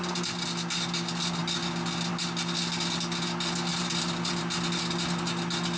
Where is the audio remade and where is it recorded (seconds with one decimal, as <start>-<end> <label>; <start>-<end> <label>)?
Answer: 0.0-3.7 recorded; 3.7-4.4 remade; 4.4-5.8 recorded